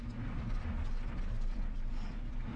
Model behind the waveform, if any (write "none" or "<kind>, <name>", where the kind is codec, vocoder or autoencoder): none